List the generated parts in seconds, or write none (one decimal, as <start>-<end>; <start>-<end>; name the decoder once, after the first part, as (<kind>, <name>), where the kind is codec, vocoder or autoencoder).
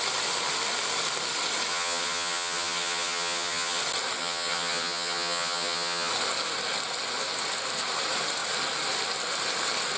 1.7-3.8 (vocoder, HiFi-GAN); 4.2-6.1